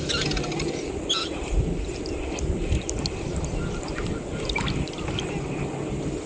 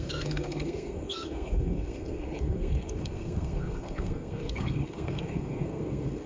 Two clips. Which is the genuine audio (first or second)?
first